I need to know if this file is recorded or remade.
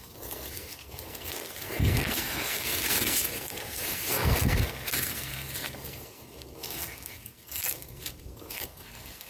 remade